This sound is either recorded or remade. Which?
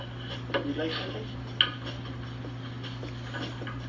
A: recorded